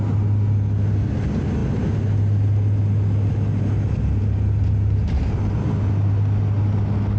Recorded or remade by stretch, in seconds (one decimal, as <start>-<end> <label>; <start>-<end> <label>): 0.0-7.2 recorded

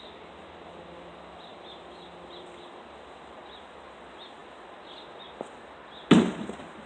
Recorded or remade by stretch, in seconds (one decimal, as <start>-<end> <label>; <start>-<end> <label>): 0.0-6.9 recorded

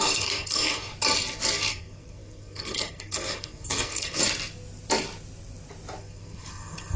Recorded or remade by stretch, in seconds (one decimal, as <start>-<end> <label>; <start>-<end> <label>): 0.0-0.9 remade; 0.9-1.7 recorded; 1.7-4.2 remade; 4.2-6.0 recorded; 6.0-7.0 remade

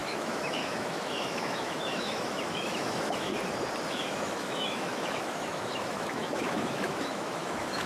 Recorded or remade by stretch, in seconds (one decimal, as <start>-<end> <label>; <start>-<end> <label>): 0.0-3.3 remade; 3.3-3.9 recorded; 3.9-7.9 remade